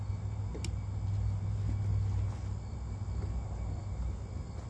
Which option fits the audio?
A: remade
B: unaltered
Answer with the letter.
B